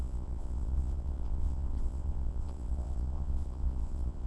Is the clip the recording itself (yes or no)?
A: no